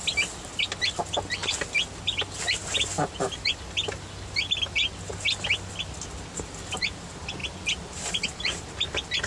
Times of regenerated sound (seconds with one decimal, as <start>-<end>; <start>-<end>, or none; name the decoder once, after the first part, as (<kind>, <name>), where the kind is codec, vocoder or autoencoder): none